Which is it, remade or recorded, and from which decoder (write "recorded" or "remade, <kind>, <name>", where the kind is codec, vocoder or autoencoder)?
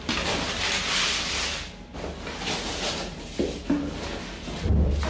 recorded